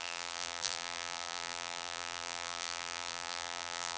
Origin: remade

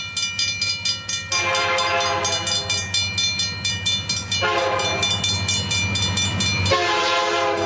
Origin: recorded